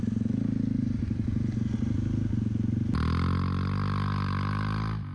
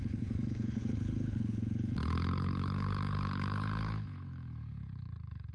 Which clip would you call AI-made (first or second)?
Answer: second